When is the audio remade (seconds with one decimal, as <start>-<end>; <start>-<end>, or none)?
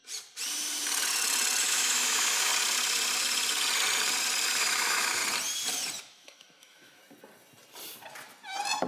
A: 1.6-2.5; 4.6-5.2; 6.0-7.0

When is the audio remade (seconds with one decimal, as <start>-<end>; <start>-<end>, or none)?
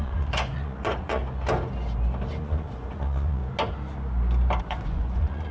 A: 0.0-1.2; 2.4-3.4; 4.6-5.5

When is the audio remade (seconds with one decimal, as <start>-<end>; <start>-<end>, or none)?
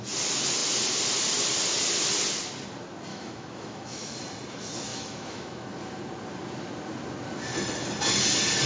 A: 3.1-4.1; 4.9-5.7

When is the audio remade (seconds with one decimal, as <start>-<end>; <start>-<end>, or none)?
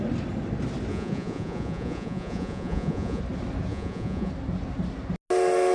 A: 0.9-3.2; 3.7-4.3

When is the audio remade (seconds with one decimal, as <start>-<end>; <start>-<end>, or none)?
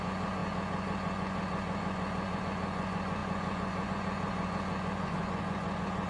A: 0.0-6.1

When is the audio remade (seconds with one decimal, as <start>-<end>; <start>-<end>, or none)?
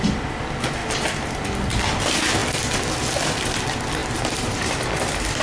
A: 4.0-4.7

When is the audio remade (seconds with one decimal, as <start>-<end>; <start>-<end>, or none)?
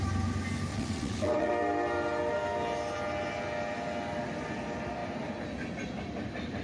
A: 0.7-1.5